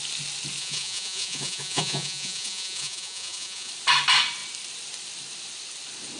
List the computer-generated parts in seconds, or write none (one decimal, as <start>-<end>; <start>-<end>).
0.6-3.7